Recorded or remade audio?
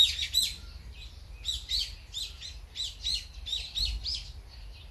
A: recorded